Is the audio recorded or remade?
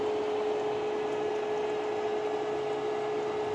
recorded